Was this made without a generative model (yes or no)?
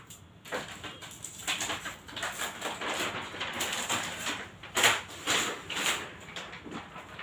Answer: yes